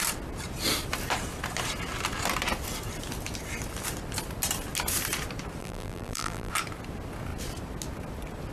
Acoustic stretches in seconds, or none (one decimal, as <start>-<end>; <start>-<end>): 0.0-5.6; 6.5-8.5